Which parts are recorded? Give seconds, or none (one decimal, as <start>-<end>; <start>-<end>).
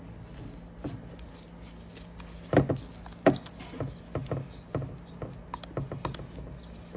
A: 0.0-7.0